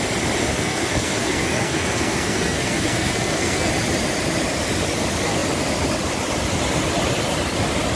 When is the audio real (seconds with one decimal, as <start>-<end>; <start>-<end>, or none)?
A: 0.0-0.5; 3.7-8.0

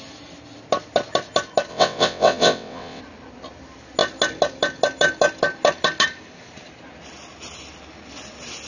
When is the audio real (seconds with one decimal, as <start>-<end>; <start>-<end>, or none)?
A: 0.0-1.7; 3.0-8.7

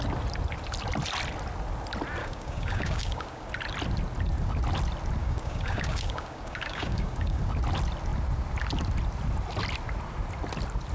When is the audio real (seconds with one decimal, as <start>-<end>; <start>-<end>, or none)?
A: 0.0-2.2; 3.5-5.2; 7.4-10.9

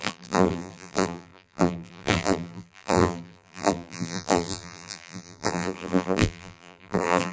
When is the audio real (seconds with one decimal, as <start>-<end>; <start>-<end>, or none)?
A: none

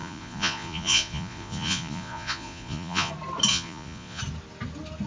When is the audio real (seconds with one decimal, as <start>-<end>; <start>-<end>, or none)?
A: 3.1-3.5; 4.2-5.1

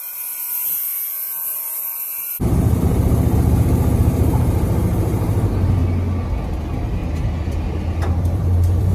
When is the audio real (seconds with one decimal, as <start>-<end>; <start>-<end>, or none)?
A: 5.8-6.6; 7.0-8.2

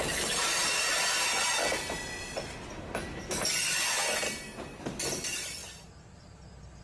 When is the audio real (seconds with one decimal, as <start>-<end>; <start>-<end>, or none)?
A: 0.0-5.6

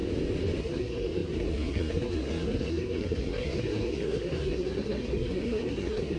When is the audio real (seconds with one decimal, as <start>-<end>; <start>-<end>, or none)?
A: 0.0-0.6